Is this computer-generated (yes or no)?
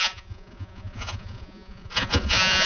yes